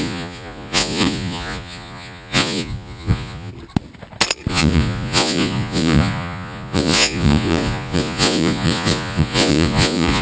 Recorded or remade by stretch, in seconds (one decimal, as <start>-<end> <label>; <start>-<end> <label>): 0.0-3.5 remade; 3.5-4.5 recorded; 4.5-10.2 remade